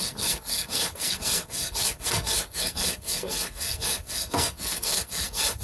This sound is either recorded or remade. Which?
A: remade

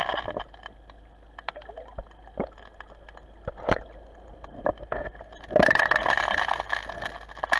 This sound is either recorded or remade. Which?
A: recorded